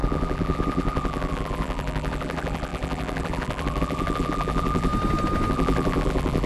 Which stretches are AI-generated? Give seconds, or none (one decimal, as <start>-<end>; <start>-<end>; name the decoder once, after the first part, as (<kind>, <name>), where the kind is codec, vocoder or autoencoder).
0.0-4.9 (vocoder, BigVGAN v2); 5.5-6.5